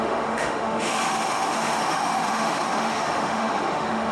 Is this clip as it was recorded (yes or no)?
no